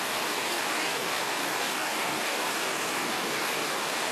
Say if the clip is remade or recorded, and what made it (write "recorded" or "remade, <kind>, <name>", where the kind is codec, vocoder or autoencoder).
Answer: remade, codec, DAC